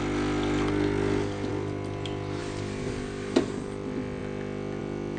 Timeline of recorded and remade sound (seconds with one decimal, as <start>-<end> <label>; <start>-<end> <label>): 0.0-5.2 recorded

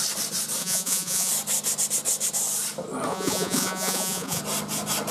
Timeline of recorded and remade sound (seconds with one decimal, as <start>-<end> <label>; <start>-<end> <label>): 0.0-0.6 recorded; 0.6-1.3 remade; 1.3-3.1 recorded; 3.1-4.4 remade; 4.4-5.1 recorded

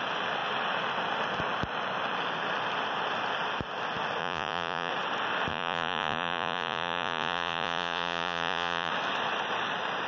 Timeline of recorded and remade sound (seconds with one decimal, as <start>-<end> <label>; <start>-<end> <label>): 0.0-4.2 recorded; 4.2-4.9 remade; 4.9-5.5 recorded; 5.5-8.9 remade; 8.9-10.1 recorded

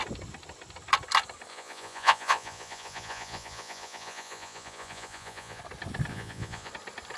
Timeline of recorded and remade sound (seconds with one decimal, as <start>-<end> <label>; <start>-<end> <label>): 0.0-1.5 recorded; 1.5-5.6 remade; 5.6-6.1 recorded; 6.1-6.7 remade; 6.7-7.2 recorded

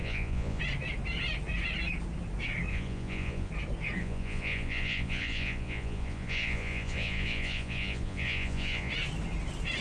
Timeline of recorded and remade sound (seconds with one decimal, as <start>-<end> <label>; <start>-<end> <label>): 0.0-0.6 remade; 0.6-2.7 recorded; 2.7-3.5 remade; 3.5-4.0 recorded; 4.0-8.9 remade; 8.9-9.8 recorded

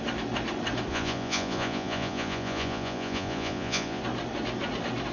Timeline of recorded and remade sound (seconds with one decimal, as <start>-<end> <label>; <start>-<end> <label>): 0.0-0.9 recorded; 0.9-4.0 remade; 4.0-5.1 recorded